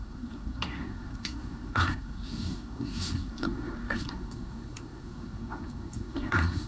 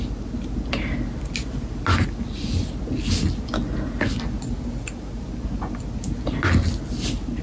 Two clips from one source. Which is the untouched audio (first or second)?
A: second